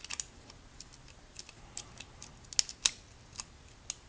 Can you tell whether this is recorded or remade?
recorded